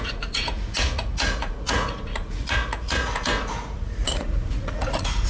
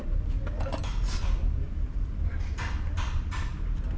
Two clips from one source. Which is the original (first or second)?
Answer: second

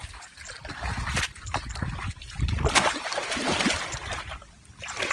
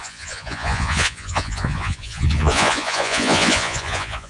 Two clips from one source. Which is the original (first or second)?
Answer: first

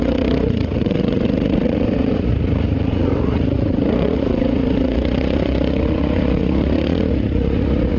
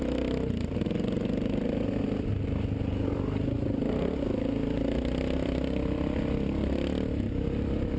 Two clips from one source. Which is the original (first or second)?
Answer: second